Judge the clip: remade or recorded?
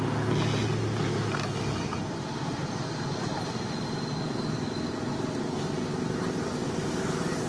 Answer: recorded